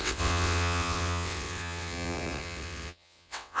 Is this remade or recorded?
remade